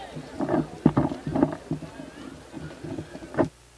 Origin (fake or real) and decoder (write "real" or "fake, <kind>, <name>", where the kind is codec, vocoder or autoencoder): real